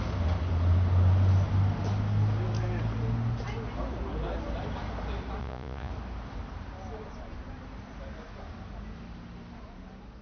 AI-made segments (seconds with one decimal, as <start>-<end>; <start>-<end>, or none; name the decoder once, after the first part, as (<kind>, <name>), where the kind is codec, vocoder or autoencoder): 5.4-5.9 (vocoder, Vocos)